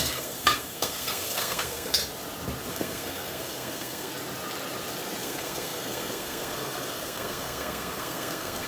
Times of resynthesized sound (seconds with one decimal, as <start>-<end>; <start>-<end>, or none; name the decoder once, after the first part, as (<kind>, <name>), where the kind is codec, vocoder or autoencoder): 0.0-2.0 (codec, SNAC); 2.7-4.1; 5.2-8.7